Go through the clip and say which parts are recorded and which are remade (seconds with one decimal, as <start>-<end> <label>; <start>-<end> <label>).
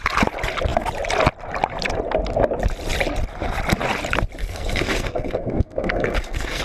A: 0.0-4.4 recorded; 4.4-6.6 remade